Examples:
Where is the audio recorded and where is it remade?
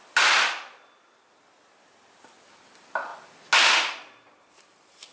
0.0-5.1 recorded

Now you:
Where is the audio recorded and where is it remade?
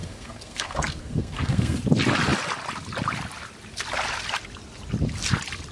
0.0-1.8 remade; 1.8-5.7 recorded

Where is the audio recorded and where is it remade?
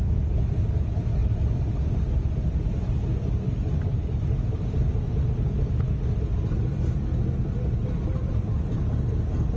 0.0-9.6 recorded